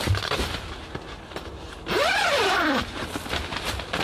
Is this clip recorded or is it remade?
recorded